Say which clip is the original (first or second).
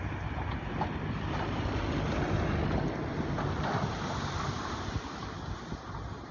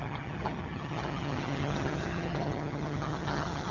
first